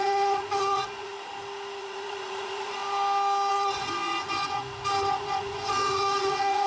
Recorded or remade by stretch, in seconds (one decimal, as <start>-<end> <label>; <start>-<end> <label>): 0.0-1.1 remade; 1.1-1.8 recorded; 1.8-2.8 remade; 2.8-3.5 recorded; 3.5-4.6 remade; 4.6-5.1 recorded; 5.1-6.7 remade

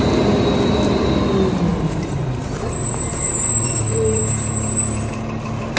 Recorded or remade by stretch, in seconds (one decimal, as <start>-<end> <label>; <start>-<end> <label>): 0.0-1.7 recorded; 1.7-4.2 remade; 4.2-5.8 recorded

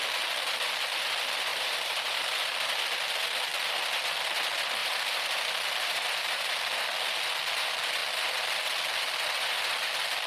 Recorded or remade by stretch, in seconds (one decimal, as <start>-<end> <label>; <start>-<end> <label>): 0.0-1.5 recorded; 1.5-2.3 remade; 2.3-4.8 recorded; 4.8-6.5 remade; 6.5-10.3 recorded

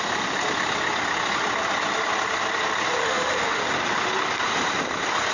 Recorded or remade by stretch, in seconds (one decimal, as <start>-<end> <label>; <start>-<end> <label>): 0.0-3.0 recorded; 3.0-3.6 remade; 3.6-5.3 recorded